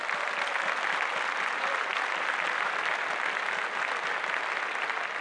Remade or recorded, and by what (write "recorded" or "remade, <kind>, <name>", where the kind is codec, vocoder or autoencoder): recorded